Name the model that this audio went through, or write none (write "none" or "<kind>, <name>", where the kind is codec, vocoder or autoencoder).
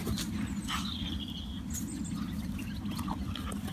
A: none